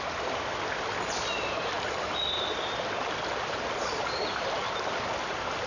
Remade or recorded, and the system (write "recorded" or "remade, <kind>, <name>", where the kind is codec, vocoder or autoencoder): recorded